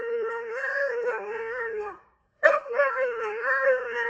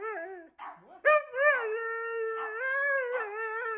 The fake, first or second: first